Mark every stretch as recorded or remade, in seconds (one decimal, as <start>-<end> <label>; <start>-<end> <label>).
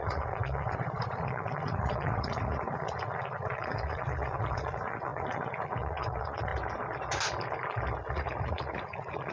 0.0-6.5 remade; 6.5-8.1 recorded; 8.1-9.3 remade